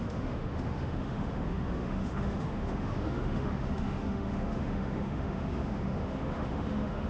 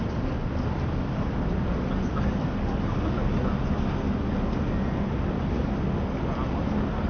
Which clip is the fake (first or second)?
first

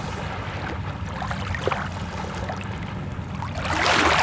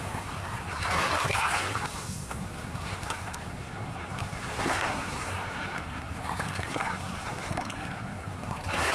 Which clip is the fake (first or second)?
second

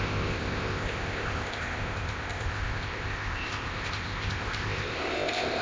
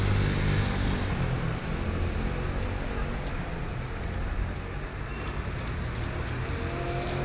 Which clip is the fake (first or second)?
first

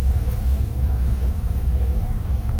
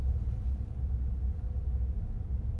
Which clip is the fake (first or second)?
first